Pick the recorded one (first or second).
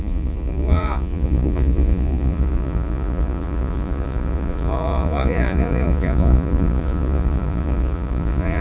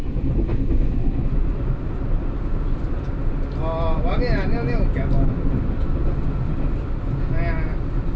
second